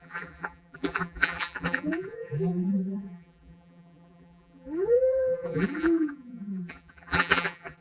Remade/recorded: remade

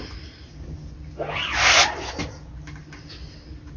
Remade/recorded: recorded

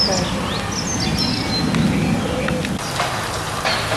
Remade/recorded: recorded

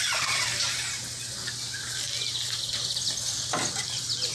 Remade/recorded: recorded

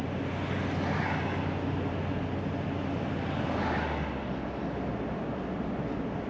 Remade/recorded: recorded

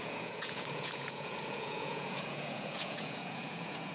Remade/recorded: remade